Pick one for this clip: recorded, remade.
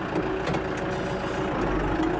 recorded